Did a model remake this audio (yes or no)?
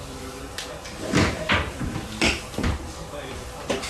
yes